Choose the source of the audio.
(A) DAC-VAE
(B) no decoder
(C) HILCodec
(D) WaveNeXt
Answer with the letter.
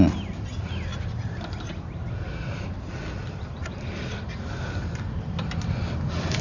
B